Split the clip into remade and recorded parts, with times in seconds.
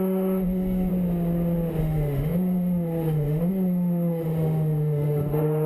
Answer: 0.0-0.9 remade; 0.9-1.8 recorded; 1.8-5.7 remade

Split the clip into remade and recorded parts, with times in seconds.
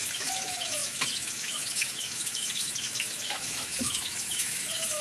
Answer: 0.0-5.0 remade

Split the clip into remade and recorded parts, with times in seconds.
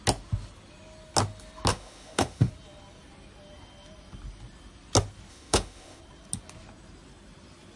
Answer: 0.0-1.7 recorded; 1.7-2.5 remade; 2.5-5.3 recorded; 5.3-6.0 remade; 6.0-7.8 recorded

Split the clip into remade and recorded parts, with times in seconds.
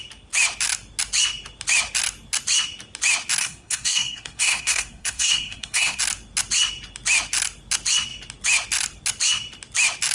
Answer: 0.0-3.4 recorded; 3.4-6.0 remade; 6.0-10.1 recorded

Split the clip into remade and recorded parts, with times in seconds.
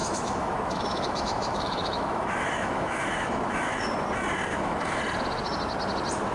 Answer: 0.0-3.8 remade; 3.8-4.5 recorded; 4.5-5.0 remade; 5.0-6.3 recorded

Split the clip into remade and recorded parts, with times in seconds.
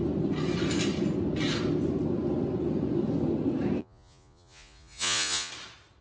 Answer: 0.0-3.8 recorded; 3.8-5.5 remade; 5.5-6.0 recorded